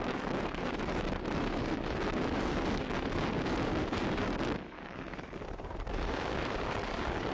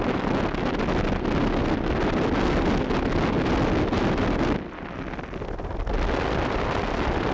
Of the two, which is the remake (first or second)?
first